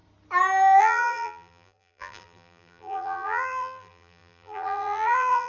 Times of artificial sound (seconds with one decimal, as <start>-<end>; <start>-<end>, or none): 0.8-5.5